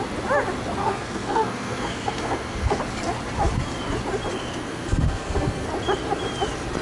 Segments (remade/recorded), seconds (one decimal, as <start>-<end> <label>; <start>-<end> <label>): 0.0-0.8 recorded; 0.8-2.8 remade; 2.8-4.3 recorded; 4.3-5.7 remade; 5.7-6.8 recorded

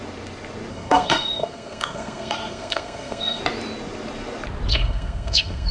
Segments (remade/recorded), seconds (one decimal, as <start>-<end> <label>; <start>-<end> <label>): 0.0-0.7 recorded; 0.7-3.4 remade; 3.4-4.7 recorded; 4.7-5.7 remade

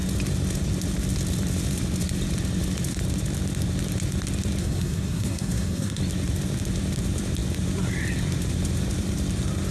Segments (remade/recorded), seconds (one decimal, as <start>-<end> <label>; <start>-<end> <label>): 0.0-4.6 recorded; 4.6-6.0 remade; 6.0-9.7 recorded

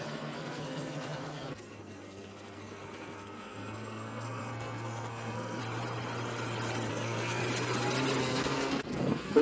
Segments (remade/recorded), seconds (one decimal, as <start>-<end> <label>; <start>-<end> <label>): 0.0-5.6 remade; 5.6-6.9 recorded; 6.9-7.4 remade; 7.4-8.2 recorded; 8.2-9.4 remade

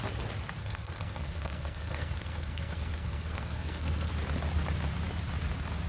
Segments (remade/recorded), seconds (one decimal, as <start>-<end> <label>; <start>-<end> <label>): 0.0-0.6 recorded; 0.6-4.1 remade; 4.1-5.9 recorded